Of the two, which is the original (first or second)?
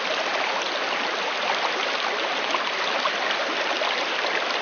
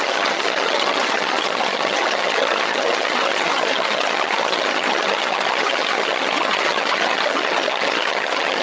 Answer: first